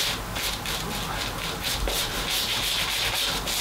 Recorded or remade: recorded